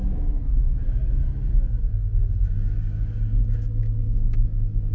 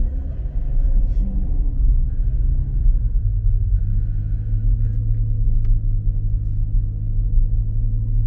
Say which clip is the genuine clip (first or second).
second